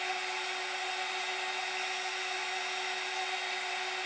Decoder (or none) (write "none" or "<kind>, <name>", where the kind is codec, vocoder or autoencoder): none